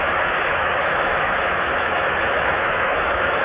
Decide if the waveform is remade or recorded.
remade